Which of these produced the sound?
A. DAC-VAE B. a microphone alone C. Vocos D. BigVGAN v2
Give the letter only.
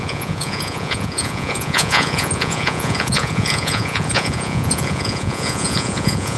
C